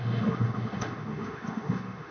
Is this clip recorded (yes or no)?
no